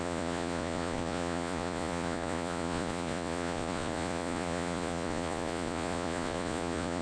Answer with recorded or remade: remade